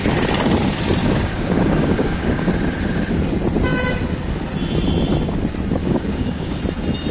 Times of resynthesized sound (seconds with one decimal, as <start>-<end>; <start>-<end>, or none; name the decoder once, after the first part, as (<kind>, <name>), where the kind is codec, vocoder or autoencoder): 1.0-2.5 (codec, DAC); 5.8-6.6